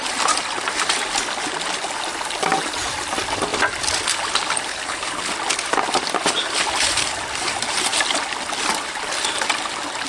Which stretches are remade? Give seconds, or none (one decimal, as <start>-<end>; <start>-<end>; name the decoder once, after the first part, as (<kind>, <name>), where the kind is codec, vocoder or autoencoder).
4.7-5.3 (codec, HILCodec)